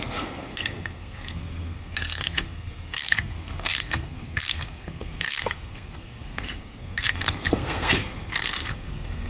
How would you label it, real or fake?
fake